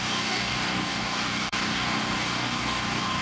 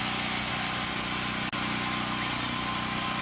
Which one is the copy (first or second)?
first